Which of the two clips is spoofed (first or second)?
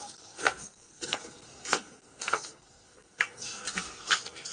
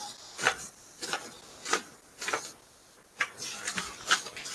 first